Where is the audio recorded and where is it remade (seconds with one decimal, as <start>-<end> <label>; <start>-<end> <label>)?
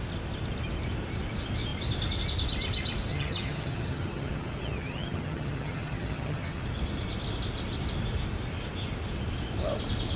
0.0-3.1 recorded; 3.1-6.6 remade; 6.6-10.2 recorded